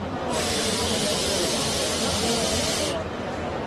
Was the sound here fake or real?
real